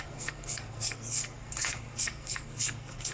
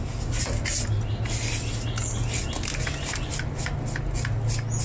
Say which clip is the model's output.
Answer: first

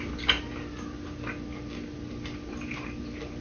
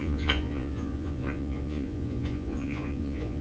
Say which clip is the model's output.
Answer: second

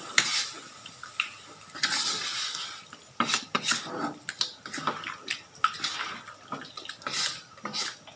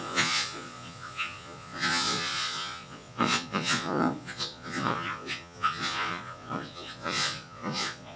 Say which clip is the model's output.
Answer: second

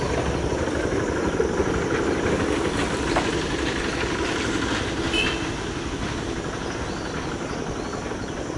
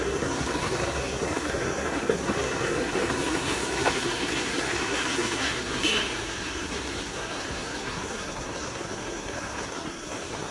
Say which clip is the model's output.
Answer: second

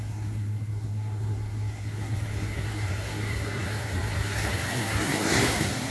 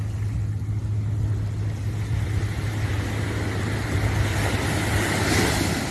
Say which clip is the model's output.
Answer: first